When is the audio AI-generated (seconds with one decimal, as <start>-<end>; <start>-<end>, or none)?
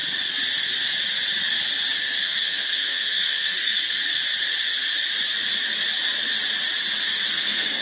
2.0-4.0; 7.3-7.8